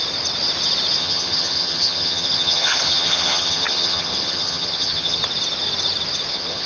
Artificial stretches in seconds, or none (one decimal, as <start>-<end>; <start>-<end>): 1.0-5.2; 6.3-6.7